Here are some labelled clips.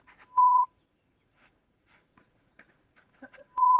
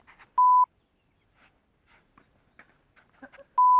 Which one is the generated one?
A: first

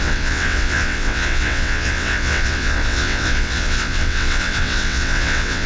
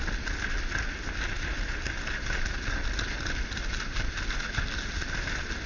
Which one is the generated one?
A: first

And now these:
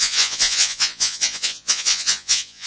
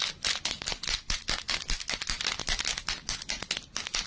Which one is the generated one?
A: first